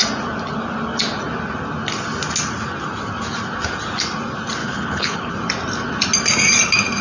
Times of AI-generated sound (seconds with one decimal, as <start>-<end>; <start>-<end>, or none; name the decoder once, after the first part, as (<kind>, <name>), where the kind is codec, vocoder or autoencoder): 4.6-5.3 (codec, HILCodec)

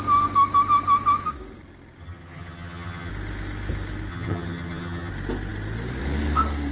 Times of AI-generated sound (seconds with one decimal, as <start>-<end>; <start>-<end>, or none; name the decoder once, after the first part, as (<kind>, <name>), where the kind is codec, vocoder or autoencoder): 2.0-3.1 (vocoder, HiFi-GAN); 4.1-5.1